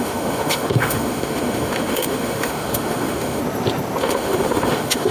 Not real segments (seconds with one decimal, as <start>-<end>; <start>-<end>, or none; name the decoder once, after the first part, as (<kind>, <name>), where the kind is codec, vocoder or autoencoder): 0.0-3.4 (autoencoder, DAC-VAE); 4.0-5.1